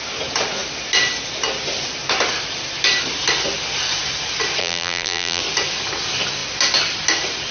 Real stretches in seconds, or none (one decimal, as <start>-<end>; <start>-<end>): 0.0-4.6; 5.4-7.5